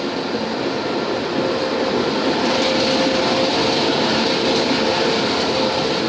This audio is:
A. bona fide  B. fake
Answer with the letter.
A